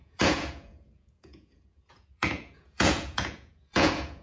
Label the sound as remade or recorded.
remade